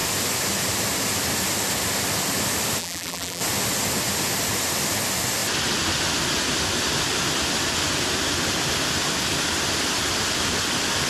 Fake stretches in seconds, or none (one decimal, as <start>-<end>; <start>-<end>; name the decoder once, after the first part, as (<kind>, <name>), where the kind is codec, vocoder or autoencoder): 2.8-3.4 (vocoder, BigVGAN v2)